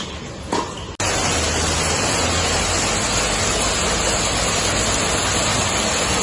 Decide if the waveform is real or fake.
real